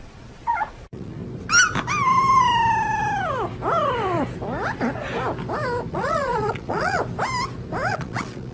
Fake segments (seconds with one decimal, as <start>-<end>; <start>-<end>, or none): 0.0-1.2; 5.9-7.0; 7.9-8.5